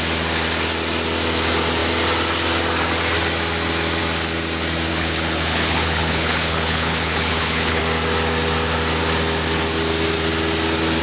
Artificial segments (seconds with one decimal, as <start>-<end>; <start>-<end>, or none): 4.9-7.8

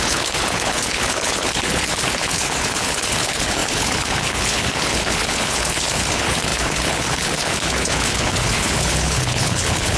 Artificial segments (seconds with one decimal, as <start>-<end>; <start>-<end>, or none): 0.0-10.0

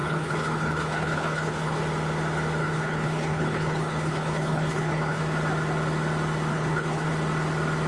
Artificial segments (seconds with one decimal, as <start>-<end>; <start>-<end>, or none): 0.0-1.8; 2.6-5.2; 6.5-7.1

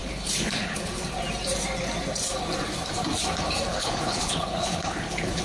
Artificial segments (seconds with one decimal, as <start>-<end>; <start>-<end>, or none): 0.0-0.9; 3.7-5.4

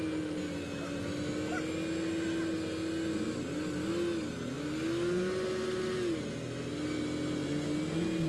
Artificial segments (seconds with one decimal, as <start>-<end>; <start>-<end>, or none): none

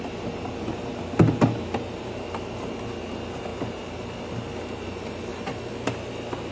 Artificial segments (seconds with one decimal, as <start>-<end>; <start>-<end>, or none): none